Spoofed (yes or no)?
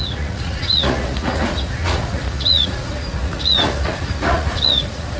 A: yes